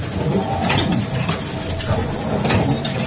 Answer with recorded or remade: recorded